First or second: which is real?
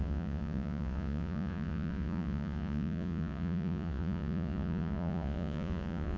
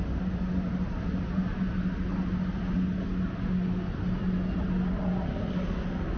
second